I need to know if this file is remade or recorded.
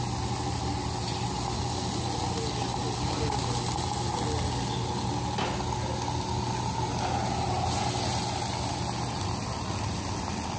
recorded